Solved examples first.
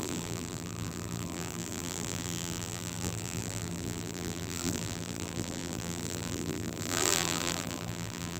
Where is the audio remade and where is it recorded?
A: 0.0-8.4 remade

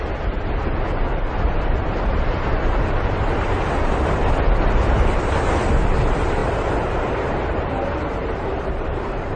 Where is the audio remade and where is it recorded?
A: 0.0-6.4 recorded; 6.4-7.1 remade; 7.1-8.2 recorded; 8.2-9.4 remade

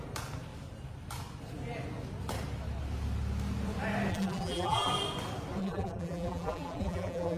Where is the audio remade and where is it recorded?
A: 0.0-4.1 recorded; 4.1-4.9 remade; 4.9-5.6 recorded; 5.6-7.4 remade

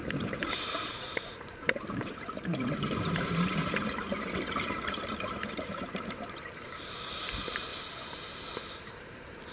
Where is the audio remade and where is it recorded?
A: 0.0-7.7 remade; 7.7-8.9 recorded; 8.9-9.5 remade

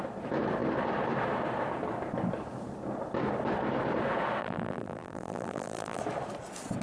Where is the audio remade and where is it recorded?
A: 0.0-4.4 recorded; 4.4-6.0 remade; 6.0-6.8 recorded